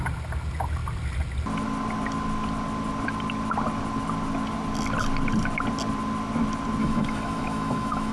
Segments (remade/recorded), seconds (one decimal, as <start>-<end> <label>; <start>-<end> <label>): 0.0-6.8 recorded; 6.8-8.1 remade